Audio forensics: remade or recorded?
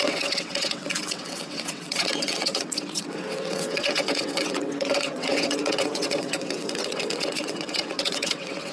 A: remade